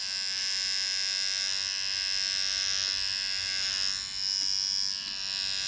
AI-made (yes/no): no